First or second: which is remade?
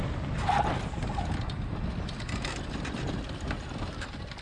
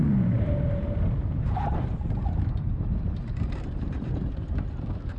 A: second